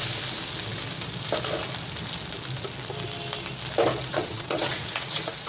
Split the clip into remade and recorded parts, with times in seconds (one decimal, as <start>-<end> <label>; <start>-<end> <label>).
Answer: 0.0-4.1 recorded; 4.1-5.5 remade